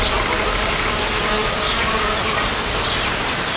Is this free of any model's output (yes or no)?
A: yes